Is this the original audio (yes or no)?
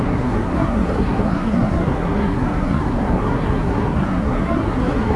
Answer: no